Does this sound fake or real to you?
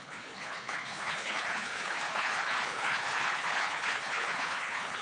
fake